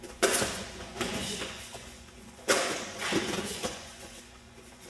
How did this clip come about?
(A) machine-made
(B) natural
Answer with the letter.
A